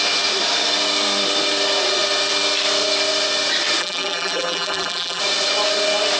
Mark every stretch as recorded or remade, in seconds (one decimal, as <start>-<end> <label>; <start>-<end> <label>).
0.0-3.8 recorded; 3.8-5.2 remade; 5.2-6.2 recorded